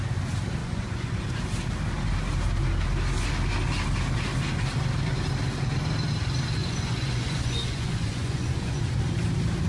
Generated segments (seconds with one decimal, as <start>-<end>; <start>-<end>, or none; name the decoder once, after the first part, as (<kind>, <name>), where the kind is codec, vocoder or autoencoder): 0.6-1.3 (vocoder, Vocos); 6.6-8.8